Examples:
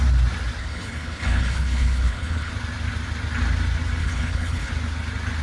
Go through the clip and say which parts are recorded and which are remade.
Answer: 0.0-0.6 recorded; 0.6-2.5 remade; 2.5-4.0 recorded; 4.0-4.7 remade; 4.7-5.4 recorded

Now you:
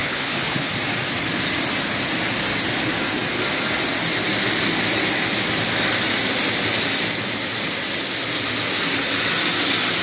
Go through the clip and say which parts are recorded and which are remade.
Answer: 0.0-0.7 remade; 0.7-10.0 recorded

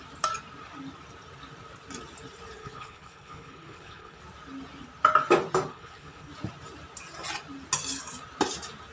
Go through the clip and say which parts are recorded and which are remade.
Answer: 0.0-2.6 recorded; 2.6-4.2 remade; 4.2-5.7 recorded; 5.7-6.3 remade; 6.3-8.9 recorded

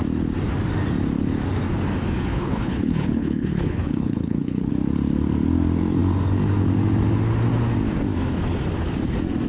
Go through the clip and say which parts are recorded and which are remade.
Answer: 0.0-2.3 recorded; 2.3-4.7 remade; 4.7-9.5 recorded

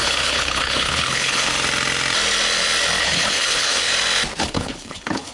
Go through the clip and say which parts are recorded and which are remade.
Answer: 0.0-1.5 remade; 1.5-3.0 recorded; 3.0-3.9 remade; 3.9-4.4 recorded; 4.4-5.3 remade

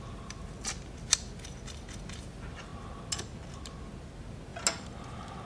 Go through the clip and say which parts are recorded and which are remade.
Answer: 0.0-5.5 recorded

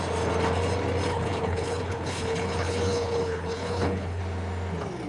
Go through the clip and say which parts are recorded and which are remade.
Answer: 0.0-1.1 recorded; 1.1-4.2 remade; 4.2-5.1 recorded